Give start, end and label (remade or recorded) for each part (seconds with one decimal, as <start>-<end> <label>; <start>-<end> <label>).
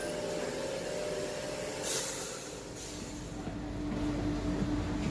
0.0-1.7 recorded; 1.7-2.6 remade; 2.6-5.1 recorded